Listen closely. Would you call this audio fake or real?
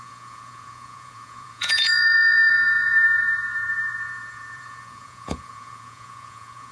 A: fake